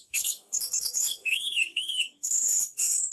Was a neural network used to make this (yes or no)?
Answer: yes